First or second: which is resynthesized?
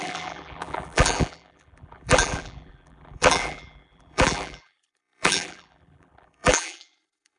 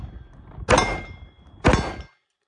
first